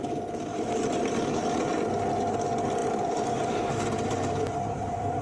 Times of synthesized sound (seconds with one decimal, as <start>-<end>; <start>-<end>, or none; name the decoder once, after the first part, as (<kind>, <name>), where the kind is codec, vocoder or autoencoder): 0.5-1.4 (vocoder, BigVGAN v2); 2.8-5.2